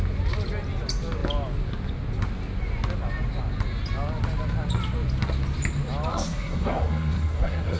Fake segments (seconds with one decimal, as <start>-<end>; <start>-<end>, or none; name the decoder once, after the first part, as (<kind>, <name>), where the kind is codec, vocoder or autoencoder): 6.1-7.8 (codec, SNAC)